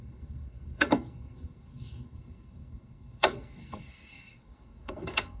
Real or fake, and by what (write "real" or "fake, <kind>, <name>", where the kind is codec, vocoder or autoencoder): fake, codec, SNAC